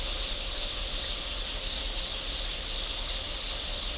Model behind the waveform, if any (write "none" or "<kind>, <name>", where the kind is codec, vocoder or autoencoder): none